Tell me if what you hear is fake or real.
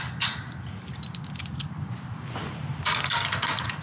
real